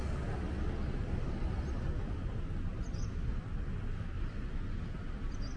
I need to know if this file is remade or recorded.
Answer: recorded